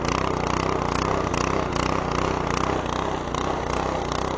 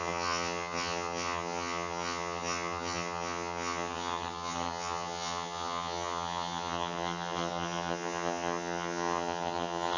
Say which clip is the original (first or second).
first